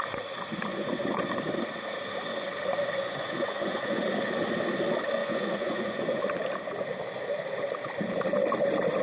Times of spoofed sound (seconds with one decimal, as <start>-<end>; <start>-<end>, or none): 0.7-1.3; 3.0-4.0; 5.2-6.2